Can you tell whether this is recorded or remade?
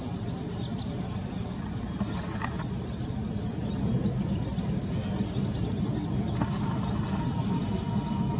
recorded